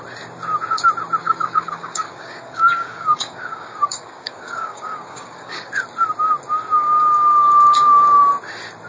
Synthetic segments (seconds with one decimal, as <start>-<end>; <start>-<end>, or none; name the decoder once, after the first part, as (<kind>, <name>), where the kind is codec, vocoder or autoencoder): 1.2-5.7 (codec, DAC)